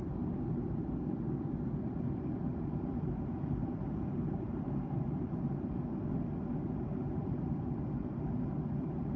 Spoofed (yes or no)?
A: yes